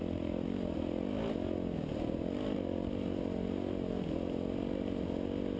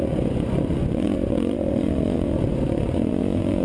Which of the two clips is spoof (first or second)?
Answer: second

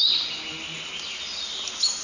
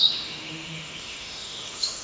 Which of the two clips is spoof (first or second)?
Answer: second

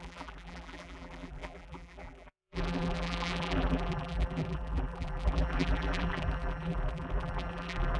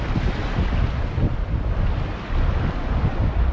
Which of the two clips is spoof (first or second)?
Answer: first